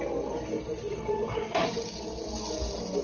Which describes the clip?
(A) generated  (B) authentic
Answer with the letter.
B